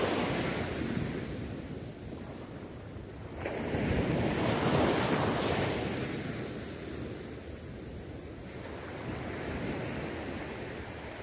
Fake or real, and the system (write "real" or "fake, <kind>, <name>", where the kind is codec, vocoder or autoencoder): real